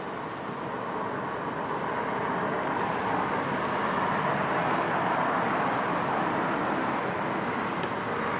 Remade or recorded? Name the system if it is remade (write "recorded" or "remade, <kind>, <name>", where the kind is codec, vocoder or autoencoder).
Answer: recorded